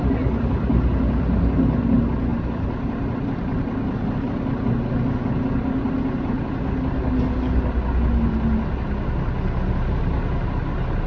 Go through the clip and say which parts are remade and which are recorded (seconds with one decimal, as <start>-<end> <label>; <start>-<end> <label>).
0.0-11.1 recorded